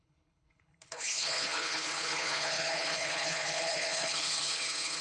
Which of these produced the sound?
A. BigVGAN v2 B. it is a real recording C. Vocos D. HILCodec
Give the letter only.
D